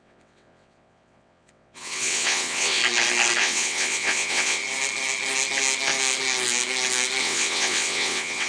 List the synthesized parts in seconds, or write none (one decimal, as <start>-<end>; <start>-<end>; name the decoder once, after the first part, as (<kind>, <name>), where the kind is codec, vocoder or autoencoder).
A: 0.0-2.8 (vocoder, WaveNeXt); 3.4-4.6; 7.2-8.5